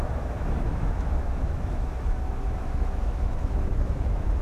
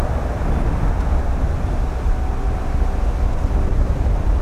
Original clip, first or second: second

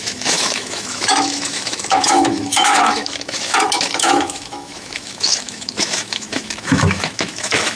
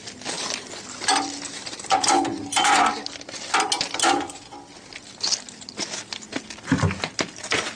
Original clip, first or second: second